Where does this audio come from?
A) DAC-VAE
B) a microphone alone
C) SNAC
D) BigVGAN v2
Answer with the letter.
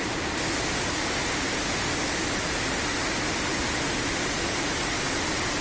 B